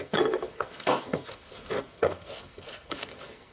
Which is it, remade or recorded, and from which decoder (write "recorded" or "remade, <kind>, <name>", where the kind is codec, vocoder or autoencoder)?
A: remade, codec, SNAC